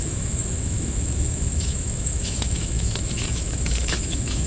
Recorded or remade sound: remade